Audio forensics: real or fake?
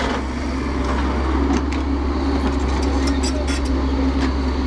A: real